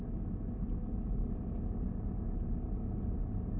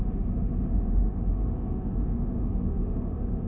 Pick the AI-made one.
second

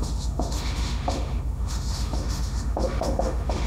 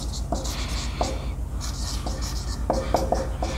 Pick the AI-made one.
first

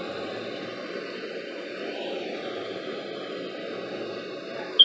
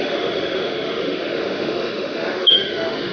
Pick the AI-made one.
second